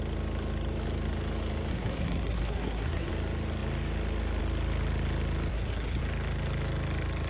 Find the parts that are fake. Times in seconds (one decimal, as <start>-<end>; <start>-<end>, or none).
1.7-3.1; 5.5-6.0